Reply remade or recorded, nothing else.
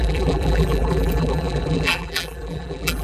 remade